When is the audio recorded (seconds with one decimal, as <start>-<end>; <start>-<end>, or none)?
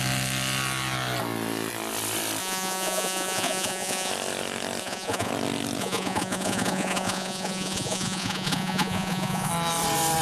0.0-2.4; 4.1-4.8; 5.3-5.8; 9.5-10.2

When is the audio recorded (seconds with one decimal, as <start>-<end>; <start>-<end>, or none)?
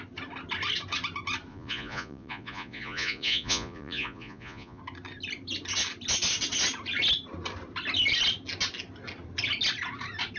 0.0-1.5; 4.8-10.4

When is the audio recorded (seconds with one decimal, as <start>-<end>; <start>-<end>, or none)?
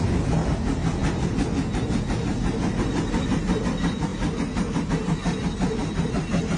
0.0-6.6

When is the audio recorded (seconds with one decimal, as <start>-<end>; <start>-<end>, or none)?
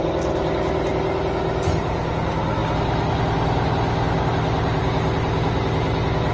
0.0-6.3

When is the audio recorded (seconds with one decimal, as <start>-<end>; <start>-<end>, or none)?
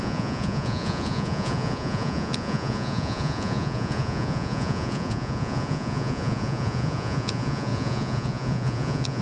none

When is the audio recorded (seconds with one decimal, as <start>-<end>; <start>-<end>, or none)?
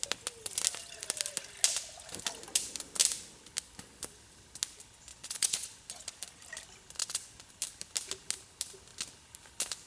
0.0-5.1; 5.9-7.0; 7.5-9.9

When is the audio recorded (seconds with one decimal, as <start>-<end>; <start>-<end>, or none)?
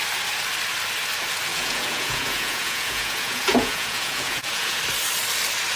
0.0-1.5; 4.8-5.8